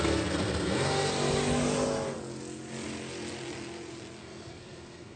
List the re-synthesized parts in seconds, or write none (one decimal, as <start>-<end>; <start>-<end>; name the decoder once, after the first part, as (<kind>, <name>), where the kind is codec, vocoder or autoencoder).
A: 0.0-1.1 (codec, SNAC); 4.2-5.2